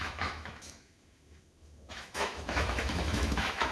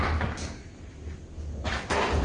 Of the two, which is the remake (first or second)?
first